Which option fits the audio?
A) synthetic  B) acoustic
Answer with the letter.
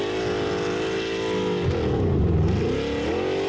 B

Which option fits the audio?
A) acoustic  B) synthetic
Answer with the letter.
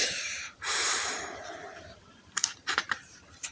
B